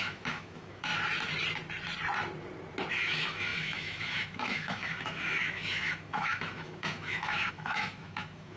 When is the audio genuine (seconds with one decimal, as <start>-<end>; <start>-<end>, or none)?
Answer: 0.9-2.9